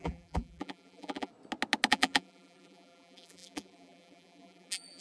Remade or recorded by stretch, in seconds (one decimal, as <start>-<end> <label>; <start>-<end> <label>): 0.0-1.3 remade; 1.3-1.9 recorded; 1.9-5.0 remade